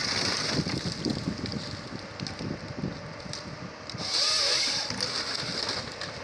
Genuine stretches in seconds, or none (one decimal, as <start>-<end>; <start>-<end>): 1.1-6.2